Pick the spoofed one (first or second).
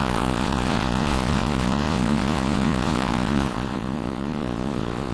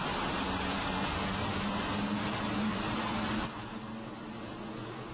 first